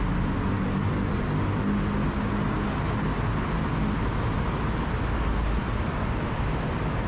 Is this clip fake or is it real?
real